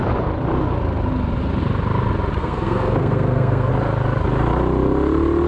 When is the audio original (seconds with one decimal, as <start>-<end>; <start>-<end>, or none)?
0.0-2.4; 3.7-5.5